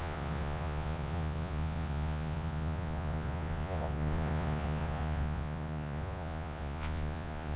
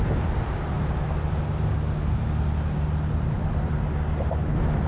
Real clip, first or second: second